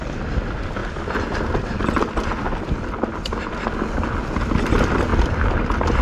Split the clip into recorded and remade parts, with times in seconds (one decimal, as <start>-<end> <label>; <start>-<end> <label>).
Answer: 0.0-6.0 recorded